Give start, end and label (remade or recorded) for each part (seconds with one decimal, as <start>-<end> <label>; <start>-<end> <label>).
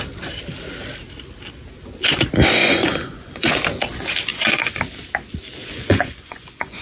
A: 0.0-2.6 recorded; 2.6-3.6 remade; 3.6-4.3 recorded; 4.3-4.8 remade; 4.8-5.6 recorded; 5.6-6.8 remade